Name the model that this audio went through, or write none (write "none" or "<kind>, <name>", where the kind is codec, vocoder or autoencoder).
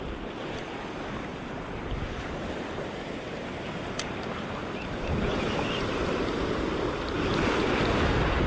none